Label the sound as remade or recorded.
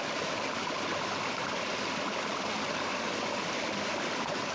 recorded